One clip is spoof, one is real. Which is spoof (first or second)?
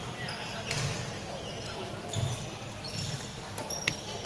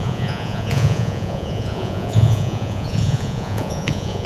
second